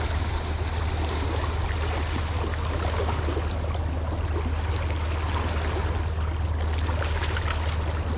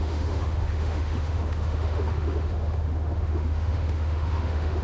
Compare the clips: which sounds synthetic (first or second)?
second